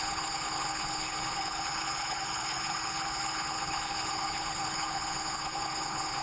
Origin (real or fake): fake